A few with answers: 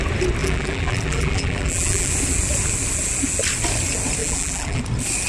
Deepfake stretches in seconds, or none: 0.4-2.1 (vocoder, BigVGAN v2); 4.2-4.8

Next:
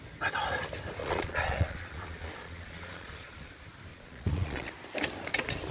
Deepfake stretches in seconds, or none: 1.0-3.5 (vocoder, Vocos); 3.9-4.7

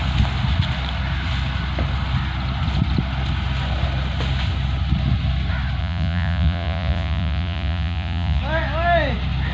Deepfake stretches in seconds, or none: 5.8-8.4 (vocoder, Vocos)

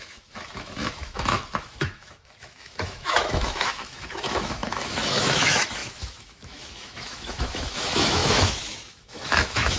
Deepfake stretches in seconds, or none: 0.0-9.8 (autoencoder, DAC-VAE)